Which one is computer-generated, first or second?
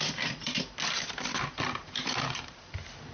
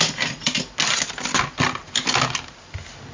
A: first